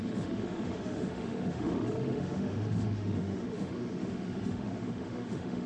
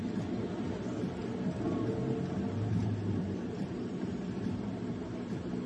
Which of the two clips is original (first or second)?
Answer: second